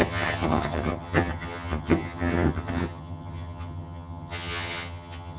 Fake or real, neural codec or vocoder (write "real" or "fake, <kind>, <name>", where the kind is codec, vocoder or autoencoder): fake, vocoder, HiFi-GAN